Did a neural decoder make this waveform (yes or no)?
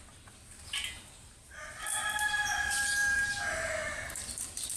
yes